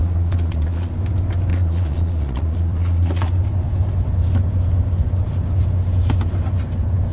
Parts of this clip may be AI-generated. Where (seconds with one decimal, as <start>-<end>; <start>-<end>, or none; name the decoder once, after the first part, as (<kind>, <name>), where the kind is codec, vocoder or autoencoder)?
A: 0.0-0.9 (vocoder, Vocos); 1.5-3.3